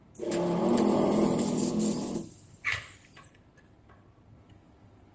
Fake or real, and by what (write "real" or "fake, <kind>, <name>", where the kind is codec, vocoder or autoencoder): real